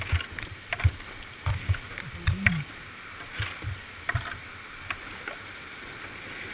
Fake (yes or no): no